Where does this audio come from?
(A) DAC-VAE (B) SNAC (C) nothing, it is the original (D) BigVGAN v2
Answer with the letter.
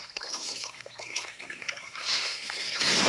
B